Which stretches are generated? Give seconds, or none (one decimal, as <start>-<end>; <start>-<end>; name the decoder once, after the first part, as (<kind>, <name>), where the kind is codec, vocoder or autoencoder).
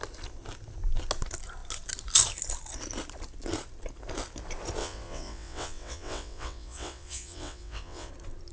4.8-8.1 (vocoder, WaveNeXt)